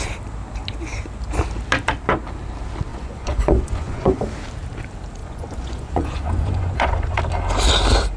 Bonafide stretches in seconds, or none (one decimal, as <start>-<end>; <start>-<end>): 0.0-2.9; 4.2-5.2; 7.2-8.2